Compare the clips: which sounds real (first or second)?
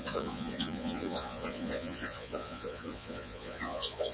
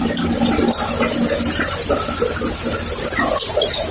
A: second